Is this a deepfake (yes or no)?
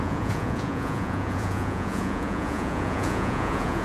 yes